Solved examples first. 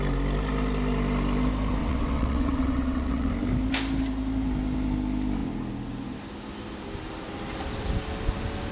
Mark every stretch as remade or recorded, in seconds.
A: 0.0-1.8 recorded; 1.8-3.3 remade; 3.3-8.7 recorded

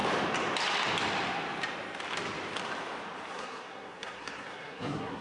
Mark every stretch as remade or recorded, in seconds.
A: 0.0-3.3 recorded; 3.3-5.2 remade

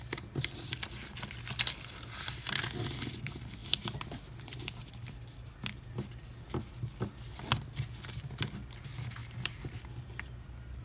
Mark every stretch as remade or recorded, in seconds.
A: 0.0-9.2 recorded; 9.2-9.8 remade; 9.8-10.8 recorded

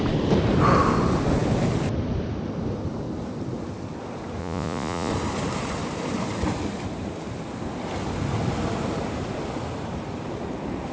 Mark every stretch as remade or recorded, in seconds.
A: 0.0-4.4 recorded; 4.4-5.1 remade; 5.1-10.9 recorded

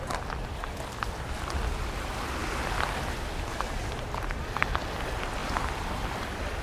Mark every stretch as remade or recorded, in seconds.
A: 0.0-6.6 recorded

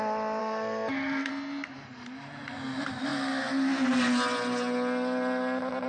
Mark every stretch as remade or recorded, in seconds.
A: 0.0-0.4 recorded; 0.4-1.3 remade; 1.3-5.9 recorded

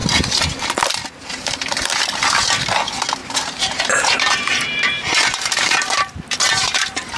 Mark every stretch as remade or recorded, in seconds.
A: 0.0-0.6 remade; 0.6-3.2 recorded; 3.2-7.2 remade